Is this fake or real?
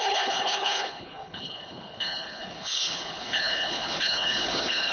fake